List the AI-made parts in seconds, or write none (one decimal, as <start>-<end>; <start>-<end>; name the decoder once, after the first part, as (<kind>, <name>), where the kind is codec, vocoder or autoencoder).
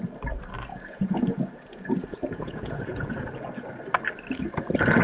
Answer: 0.7-3.7 (vocoder, Vocos)